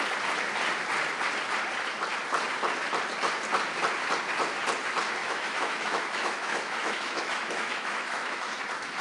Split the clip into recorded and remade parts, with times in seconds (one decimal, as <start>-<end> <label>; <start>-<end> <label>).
0.0-5.2 recorded; 5.2-8.6 remade; 8.6-9.0 recorded